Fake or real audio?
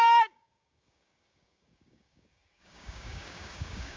fake